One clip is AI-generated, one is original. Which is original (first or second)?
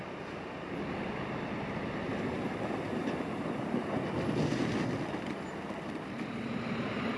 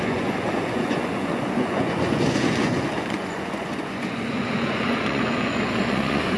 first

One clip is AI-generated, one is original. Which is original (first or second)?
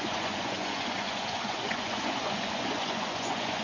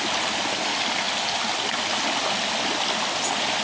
second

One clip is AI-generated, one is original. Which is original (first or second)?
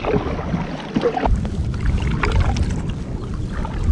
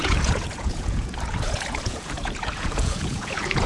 first